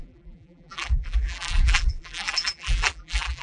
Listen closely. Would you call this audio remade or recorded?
remade